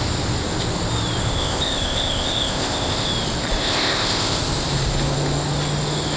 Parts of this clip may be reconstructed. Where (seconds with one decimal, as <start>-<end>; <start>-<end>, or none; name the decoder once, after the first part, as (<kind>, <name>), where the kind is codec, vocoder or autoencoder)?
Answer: 1.2-3.1 (codec, ZipCodec); 3.6-4.4